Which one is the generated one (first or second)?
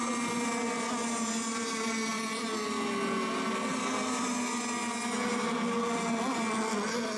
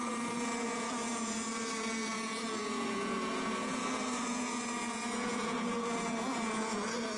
second